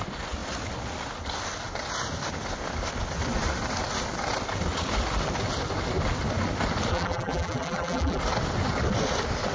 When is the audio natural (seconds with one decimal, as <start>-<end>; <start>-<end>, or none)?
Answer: 0.0-6.9; 8.2-9.5